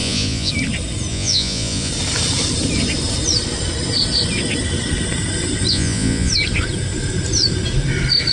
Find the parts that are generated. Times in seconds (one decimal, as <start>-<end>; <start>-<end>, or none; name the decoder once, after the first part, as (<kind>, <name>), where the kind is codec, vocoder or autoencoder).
0.0-0.5 (vocoder, Vocos); 1.1-1.9; 5.7-6.3